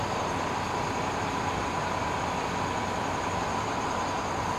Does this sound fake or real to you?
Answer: real